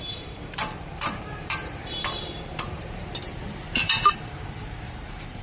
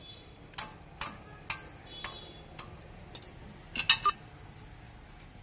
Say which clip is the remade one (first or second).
first